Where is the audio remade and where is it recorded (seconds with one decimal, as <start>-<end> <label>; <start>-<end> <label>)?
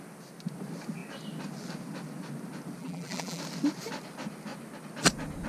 0.0-2.8 recorded; 2.8-3.4 remade; 3.4-5.5 recorded